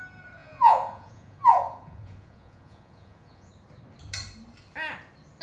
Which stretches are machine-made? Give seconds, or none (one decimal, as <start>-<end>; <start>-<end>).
0.4-3.5